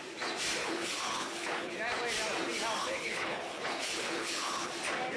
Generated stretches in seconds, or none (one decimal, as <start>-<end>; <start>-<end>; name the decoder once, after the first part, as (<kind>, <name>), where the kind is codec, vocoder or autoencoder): 0.6-1.7 (codec, HILCodec); 2.8-4.7

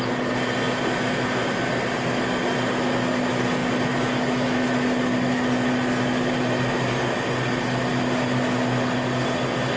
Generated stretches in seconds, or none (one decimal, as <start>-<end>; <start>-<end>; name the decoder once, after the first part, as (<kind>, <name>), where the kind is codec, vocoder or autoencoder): none

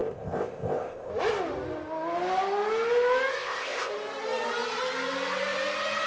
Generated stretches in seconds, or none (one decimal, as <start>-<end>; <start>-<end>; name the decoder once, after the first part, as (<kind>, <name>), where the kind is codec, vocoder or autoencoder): 0.0-1.1 (codec, ZipCodec); 3.3-3.9